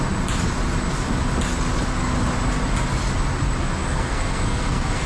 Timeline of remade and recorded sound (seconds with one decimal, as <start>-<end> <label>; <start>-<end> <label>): 0.0-3.8 recorded; 3.8-5.1 remade